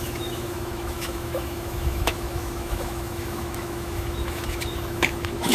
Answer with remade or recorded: remade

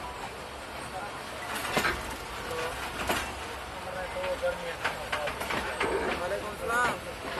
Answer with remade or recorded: recorded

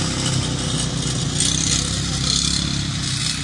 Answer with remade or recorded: recorded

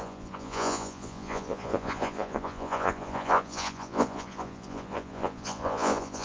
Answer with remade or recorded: remade